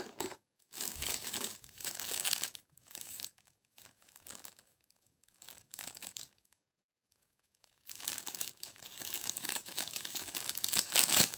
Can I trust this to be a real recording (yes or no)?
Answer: no